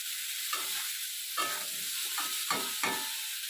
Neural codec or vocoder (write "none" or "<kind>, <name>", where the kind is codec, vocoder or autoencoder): none